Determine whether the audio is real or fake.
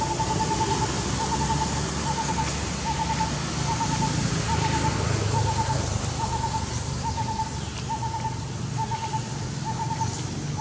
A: real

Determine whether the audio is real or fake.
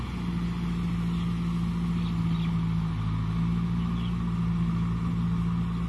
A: real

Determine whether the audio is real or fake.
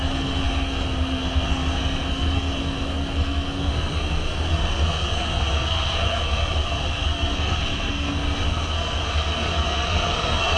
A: fake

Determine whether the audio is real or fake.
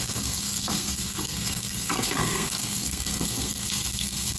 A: fake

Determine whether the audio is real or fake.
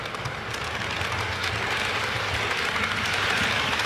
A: real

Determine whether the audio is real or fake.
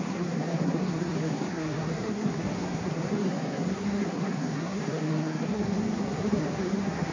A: fake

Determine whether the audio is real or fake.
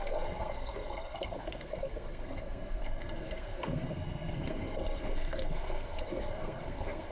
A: fake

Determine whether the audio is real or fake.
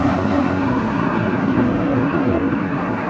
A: fake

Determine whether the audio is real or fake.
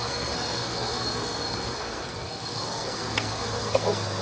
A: fake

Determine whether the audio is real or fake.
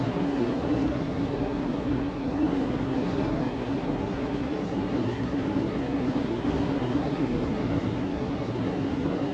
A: fake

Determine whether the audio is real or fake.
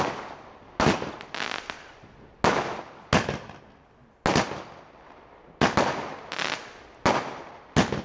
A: real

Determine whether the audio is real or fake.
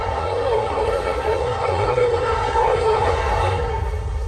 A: fake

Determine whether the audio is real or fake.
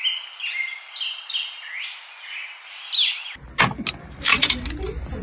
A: real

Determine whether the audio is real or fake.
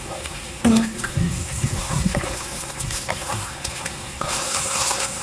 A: fake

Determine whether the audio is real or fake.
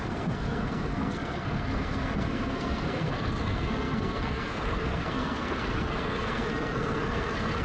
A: fake